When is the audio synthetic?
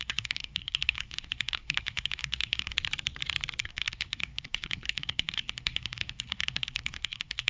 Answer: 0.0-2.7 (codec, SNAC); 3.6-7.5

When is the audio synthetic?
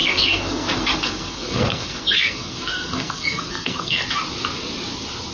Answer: 0.0-4.0 (codec, SNAC)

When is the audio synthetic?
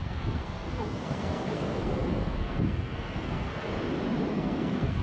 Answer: 0.0-3.7 (codec, SNAC); 4.3-5.0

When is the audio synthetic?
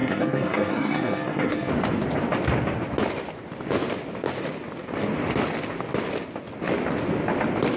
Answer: 0.0-1.7 (codec, SNAC)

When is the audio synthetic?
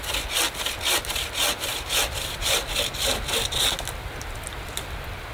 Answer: none